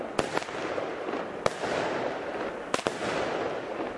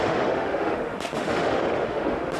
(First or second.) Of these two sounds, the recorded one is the first